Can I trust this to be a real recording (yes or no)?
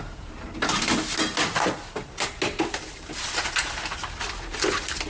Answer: yes